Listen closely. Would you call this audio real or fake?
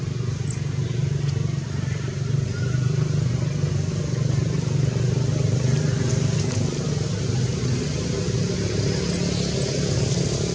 real